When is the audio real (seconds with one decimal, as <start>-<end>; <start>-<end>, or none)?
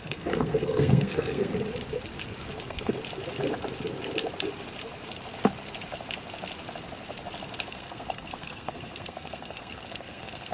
1.5-2.6; 3.0-7.7